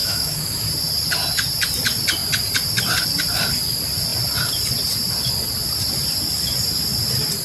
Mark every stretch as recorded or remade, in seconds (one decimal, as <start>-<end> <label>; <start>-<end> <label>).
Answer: 0.0-0.6 remade; 0.6-7.4 recorded